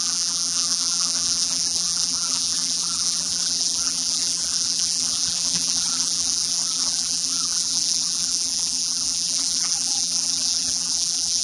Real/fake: fake